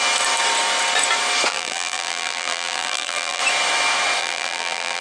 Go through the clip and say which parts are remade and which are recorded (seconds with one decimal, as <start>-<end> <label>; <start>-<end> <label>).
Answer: 0.0-1.5 recorded; 1.5-3.4 remade; 3.4-4.2 recorded; 4.2-5.0 remade